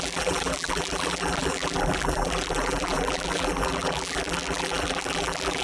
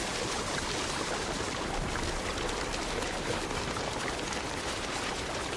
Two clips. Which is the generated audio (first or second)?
first